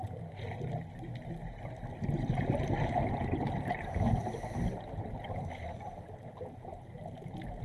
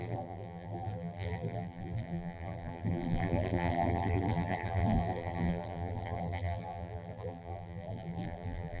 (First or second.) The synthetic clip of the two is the second